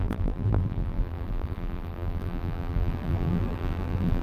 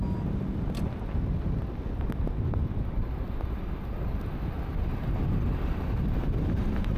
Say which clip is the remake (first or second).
first